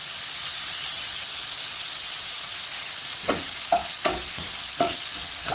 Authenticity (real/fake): fake